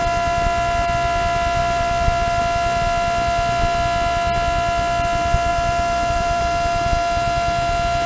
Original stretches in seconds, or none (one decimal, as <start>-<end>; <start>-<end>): 0.0-1.6; 2.4-5.5; 6.4-8.1